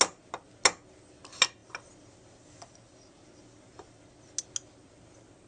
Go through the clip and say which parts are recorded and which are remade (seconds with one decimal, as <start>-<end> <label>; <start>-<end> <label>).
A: 0.0-5.5 recorded